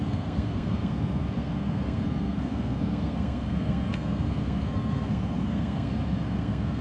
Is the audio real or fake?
fake